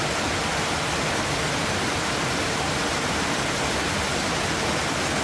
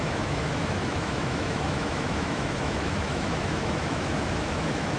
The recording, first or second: first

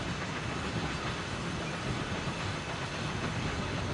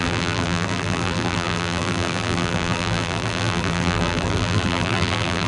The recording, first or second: first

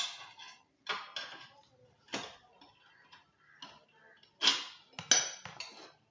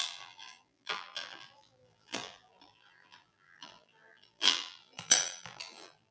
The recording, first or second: first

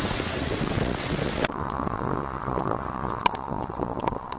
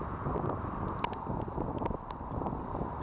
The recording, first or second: second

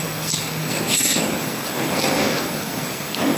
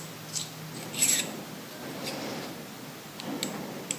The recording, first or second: second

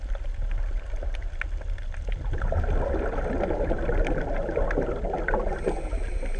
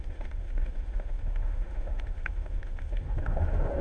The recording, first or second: first